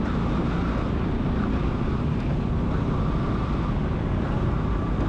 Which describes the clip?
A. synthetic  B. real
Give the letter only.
B